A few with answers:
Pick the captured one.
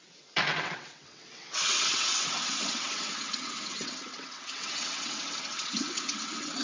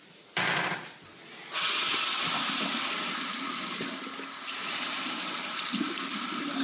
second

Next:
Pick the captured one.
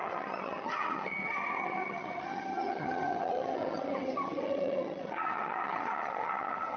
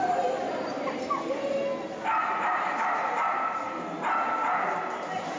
second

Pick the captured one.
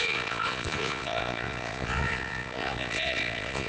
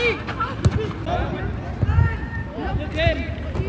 second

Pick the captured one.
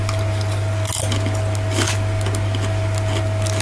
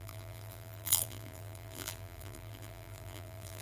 first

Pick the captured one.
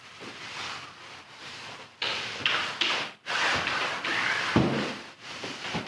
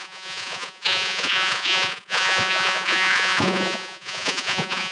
first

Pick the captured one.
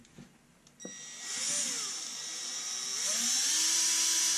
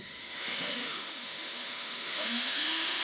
first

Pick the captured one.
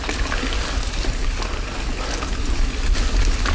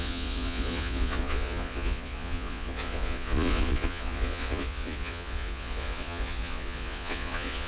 first